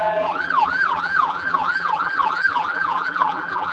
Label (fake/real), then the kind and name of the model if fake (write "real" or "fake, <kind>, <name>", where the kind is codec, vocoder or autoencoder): fake, vocoder, BigVGAN v2